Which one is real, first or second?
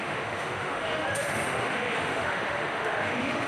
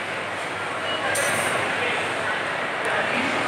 second